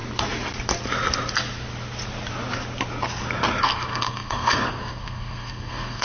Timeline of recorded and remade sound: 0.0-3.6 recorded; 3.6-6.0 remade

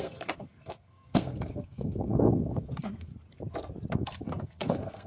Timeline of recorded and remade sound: 0.0-3.1 remade; 3.1-4.0 recorded; 4.0-5.1 remade

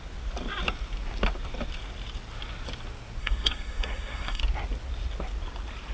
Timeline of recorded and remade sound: 0.0-3.2 recorded; 3.2-4.4 remade; 4.4-5.9 recorded

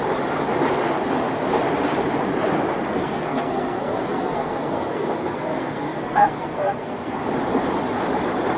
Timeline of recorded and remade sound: 0.0-2.9 recorded; 2.9-7.2 remade; 7.2-8.6 recorded

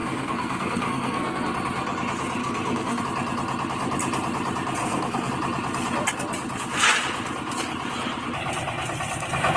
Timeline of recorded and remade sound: 0.0-1.5 remade; 1.5-2.4 recorded; 2.4-3.0 remade; 3.0-4.8 recorded; 4.8-5.3 remade; 5.3-9.6 recorded

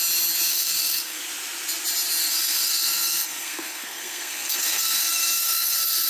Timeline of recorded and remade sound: 0.0-0.5 recorded; 0.5-1.2 remade; 1.2-2.2 recorded; 2.2-6.1 remade

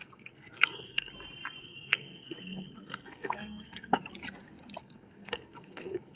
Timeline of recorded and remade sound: 0.0-1.1 remade; 1.1-1.6 recorded; 1.6-4.0 remade; 4.0-4.8 recorded; 4.8-6.2 remade

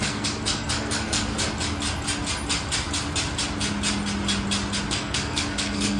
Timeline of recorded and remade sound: 0.0-1.3 remade; 1.3-4.9 recorded; 4.9-6.0 remade